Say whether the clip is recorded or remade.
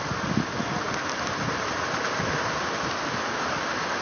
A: recorded